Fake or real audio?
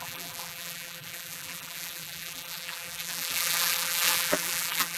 fake